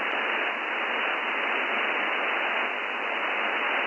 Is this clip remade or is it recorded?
recorded